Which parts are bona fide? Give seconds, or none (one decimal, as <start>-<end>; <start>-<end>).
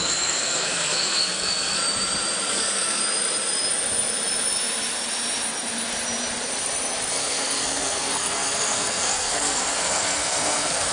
1.8-2.5; 3.0-7.1